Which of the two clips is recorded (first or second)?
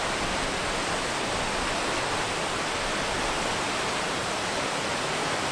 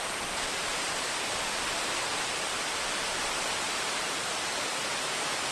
first